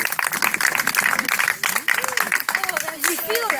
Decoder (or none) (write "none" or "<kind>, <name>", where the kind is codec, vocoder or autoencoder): none